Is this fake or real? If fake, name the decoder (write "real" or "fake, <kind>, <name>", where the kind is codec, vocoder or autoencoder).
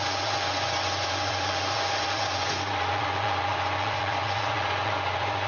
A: fake, vocoder, Vocos